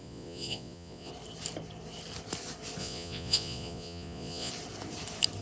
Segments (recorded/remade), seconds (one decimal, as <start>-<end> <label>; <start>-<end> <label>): 0.0-1.1 remade; 1.1-2.8 recorded; 2.8-4.5 remade; 4.5-5.4 recorded